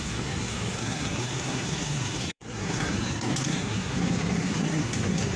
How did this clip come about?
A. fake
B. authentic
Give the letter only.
A